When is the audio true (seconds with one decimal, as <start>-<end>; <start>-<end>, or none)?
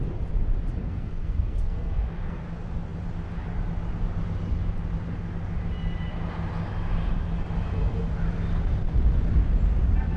0.0-0.8; 2.4-10.2